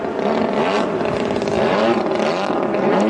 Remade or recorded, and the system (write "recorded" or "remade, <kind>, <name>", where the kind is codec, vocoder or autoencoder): recorded